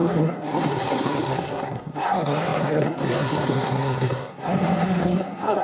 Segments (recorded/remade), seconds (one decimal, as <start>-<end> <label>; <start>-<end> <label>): 0.0-5.6 remade